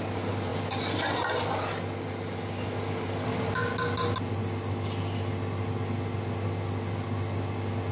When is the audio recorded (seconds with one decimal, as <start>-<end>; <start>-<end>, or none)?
0.0-7.9